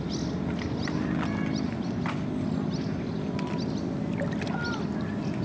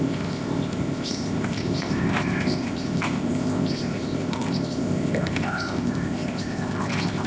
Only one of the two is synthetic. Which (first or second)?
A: second